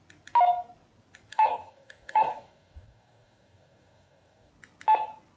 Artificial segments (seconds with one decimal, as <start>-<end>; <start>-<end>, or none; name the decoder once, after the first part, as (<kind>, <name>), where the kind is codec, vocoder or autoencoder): 1.3-4.5 (codec, DAC)